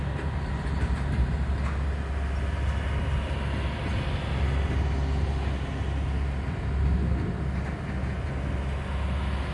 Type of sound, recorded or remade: recorded